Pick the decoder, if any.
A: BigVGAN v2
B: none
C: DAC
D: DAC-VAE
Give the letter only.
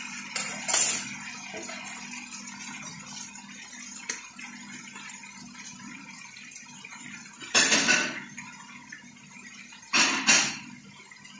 B